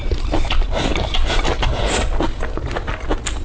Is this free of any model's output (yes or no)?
yes